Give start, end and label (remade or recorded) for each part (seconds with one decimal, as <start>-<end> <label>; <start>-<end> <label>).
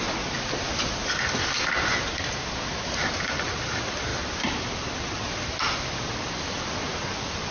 0.0-4.1 recorded; 4.1-7.5 remade